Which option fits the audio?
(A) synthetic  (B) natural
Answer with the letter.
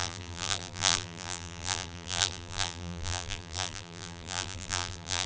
A